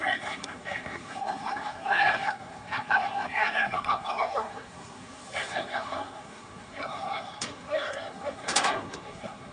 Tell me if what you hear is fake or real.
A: fake